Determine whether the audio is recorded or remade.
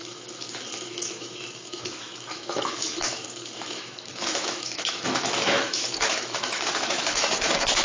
remade